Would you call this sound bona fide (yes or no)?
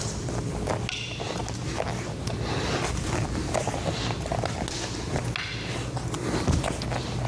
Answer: yes